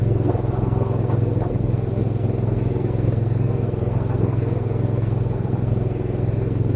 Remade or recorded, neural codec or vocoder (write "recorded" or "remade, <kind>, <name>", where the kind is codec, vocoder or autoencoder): remade, codec, SNAC